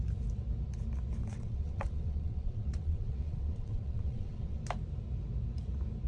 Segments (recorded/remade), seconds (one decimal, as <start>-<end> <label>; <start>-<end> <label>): 0.0-1.2 recorded; 1.2-4.6 remade; 4.6-6.1 recorded